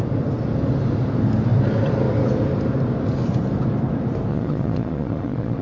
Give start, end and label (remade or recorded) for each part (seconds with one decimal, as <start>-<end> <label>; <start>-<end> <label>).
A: 0.0-4.3 recorded; 4.3-5.6 remade